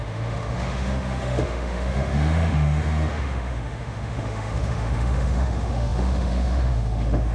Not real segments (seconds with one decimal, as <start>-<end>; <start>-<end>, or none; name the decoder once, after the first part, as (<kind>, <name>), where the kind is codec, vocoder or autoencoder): 0.0-7.3 (autoencoder, DAC-VAE)